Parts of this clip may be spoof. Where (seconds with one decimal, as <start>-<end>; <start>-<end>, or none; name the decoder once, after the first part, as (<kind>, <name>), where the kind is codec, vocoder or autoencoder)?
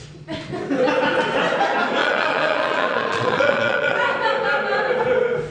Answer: 2.0-4.0 (vocoder, Vocos)